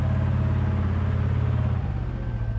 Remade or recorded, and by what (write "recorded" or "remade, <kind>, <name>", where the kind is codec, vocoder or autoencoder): recorded